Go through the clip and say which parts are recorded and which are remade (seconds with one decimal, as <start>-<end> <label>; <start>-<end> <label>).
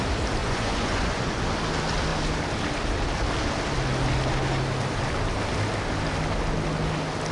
0.0-0.4 recorded; 0.4-1.4 remade; 1.4-7.3 recorded